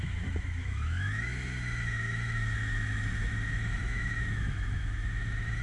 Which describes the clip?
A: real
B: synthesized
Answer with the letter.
B